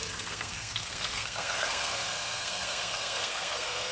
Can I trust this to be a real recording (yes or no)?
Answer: no